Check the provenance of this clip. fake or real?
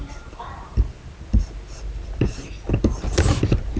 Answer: real